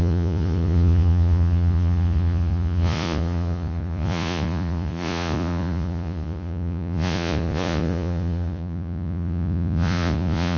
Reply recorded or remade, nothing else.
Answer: remade